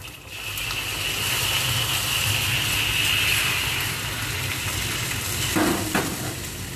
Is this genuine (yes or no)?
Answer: yes